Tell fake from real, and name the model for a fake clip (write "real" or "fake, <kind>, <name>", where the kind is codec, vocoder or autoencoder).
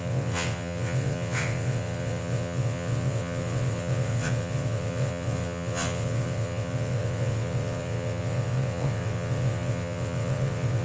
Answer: fake, vocoder, WaveNeXt